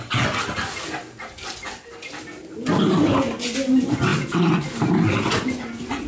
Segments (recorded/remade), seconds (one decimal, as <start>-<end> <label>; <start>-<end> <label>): 0.0-1.0 recorded; 1.0-3.2 remade; 3.2-4.1 recorded; 4.1-5.3 remade; 5.3-6.1 recorded